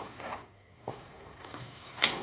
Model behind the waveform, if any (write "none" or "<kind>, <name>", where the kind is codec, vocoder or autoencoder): codec, SNAC